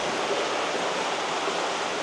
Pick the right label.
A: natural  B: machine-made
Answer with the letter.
A